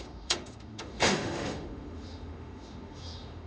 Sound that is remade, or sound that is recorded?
remade